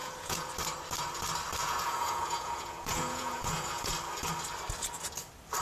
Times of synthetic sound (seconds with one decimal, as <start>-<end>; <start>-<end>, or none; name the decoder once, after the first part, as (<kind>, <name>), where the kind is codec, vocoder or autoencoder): 0.0-0.5 (vocoder, Vocos); 1.6-3.9